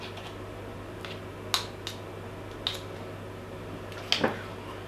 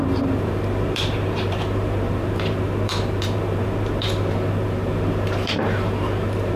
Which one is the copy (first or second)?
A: second